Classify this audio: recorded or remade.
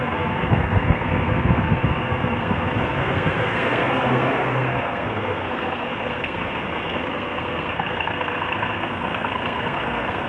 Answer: remade